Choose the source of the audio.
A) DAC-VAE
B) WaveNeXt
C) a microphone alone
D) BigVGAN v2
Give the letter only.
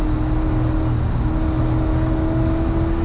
C